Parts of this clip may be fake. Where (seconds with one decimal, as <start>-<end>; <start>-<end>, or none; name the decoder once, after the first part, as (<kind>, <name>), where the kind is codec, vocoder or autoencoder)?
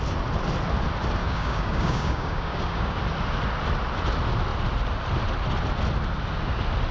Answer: 1.2-3.0 (codec, DAC)